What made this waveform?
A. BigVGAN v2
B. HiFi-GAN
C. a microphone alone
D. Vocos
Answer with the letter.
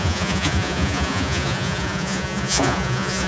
D